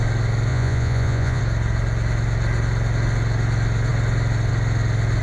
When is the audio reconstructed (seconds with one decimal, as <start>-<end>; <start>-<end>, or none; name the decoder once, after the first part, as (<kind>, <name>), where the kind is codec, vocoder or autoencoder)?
0.5-1.4 (vocoder, Vocos)